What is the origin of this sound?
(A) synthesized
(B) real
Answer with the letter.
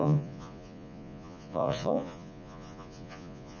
A